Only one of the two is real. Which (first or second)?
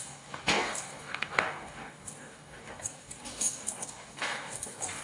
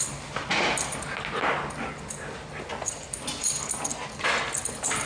second